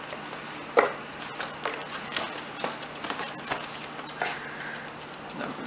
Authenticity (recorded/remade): recorded